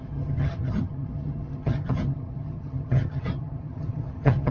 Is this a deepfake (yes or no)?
yes